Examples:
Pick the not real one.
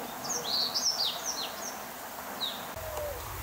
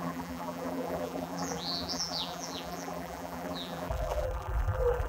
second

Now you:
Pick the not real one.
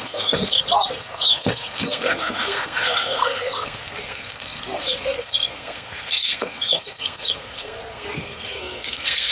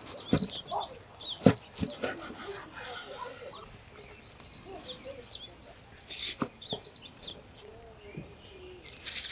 first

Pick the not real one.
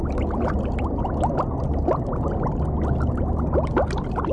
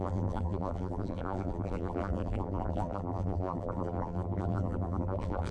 second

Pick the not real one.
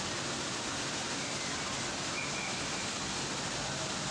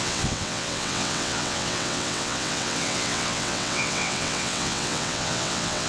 second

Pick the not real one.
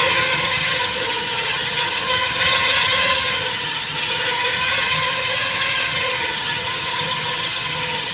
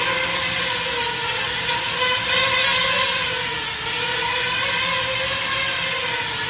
first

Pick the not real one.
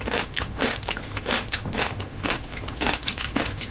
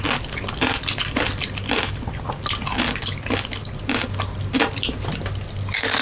first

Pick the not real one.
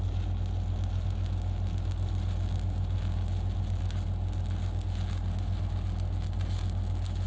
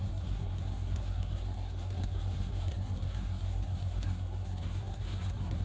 second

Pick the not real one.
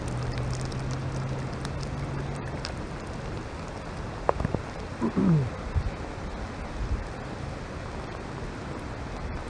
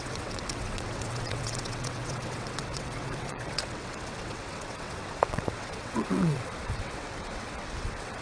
second